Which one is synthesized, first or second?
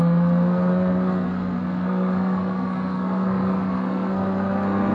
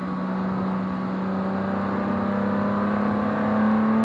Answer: first